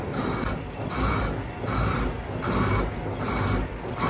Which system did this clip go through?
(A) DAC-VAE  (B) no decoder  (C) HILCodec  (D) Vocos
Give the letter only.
B